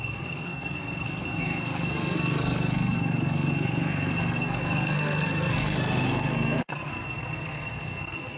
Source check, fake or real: fake